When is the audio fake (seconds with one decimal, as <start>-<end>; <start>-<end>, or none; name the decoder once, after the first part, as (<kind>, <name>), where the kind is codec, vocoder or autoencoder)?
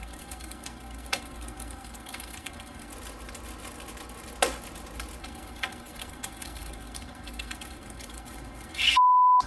0.0-2.9 (codec, SNAC); 5.2-9.5